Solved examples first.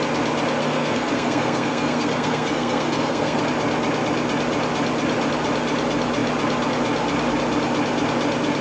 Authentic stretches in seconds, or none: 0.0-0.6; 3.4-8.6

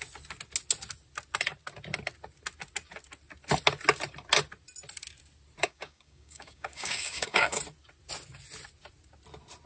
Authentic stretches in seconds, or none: 0.0-5.6; 7.6-9.7

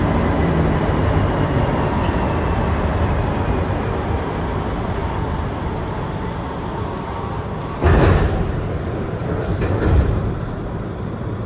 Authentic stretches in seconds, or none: 0.0-11.5